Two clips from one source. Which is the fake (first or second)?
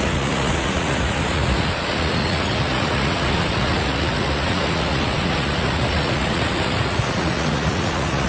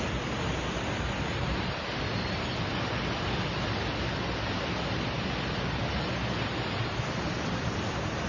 first